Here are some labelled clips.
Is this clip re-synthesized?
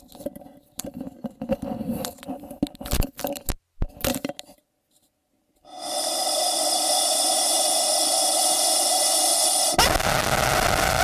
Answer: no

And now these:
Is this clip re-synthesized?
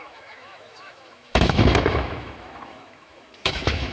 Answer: yes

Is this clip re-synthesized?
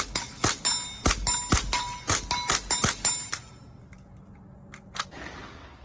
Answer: no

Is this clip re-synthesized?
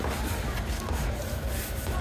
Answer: no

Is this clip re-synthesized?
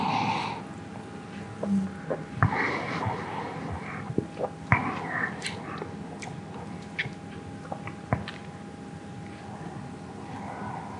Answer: no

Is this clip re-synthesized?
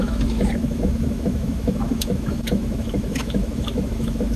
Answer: yes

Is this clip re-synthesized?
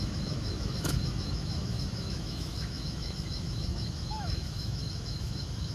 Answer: yes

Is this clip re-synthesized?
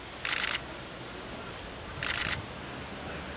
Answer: no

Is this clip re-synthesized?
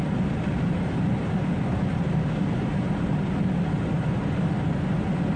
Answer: no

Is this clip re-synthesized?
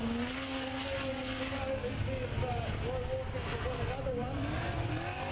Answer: no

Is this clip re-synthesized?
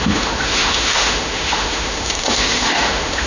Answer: yes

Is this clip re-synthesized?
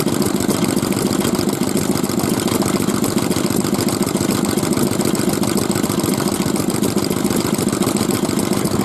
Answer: no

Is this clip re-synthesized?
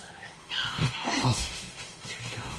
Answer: yes